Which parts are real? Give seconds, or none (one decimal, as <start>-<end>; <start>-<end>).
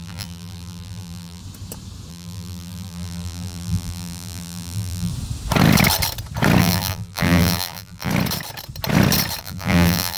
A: 1.4-2.1; 5.1-6.6; 8.1-9.4